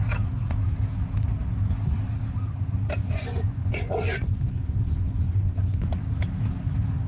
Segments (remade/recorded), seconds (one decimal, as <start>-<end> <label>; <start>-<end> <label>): 0.0-3.0 recorded; 3.0-6.0 remade; 6.0-7.1 recorded